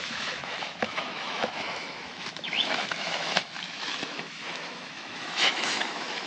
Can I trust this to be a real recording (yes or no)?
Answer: no